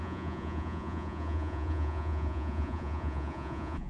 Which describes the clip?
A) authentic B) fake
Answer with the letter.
B